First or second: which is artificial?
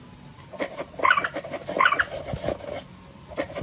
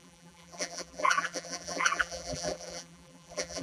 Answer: second